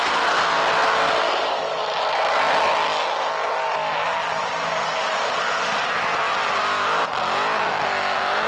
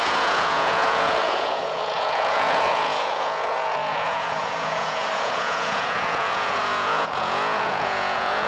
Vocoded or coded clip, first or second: second